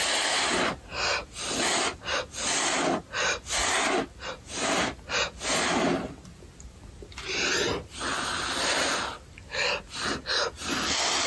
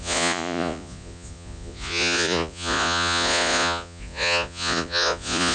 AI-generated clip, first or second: second